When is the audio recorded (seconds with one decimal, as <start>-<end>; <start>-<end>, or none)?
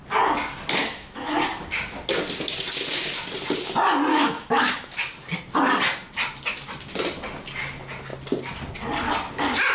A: 0.0-0.8; 1.4-4.1; 5.0-9.7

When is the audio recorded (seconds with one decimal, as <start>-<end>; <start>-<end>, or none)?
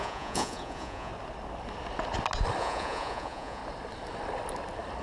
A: 1.1-2.6; 3.6-5.0